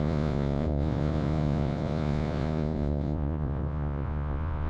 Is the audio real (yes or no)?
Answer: no